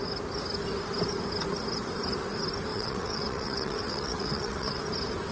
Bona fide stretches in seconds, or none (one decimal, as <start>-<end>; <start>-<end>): 0.0-2.7; 4.8-5.3